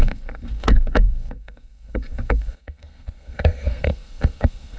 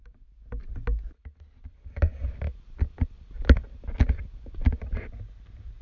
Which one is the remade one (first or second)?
first